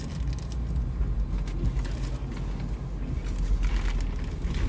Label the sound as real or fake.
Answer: real